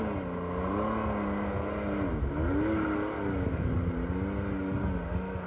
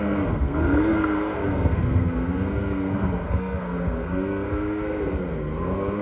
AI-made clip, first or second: second